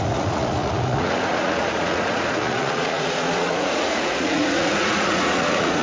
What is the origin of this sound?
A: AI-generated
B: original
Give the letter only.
A